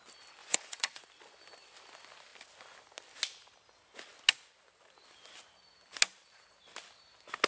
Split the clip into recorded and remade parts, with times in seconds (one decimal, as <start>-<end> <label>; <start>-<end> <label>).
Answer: 0.0-0.4 recorded; 0.4-1.0 remade; 1.0-7.5 recorded